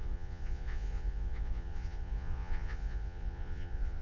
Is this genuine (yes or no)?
no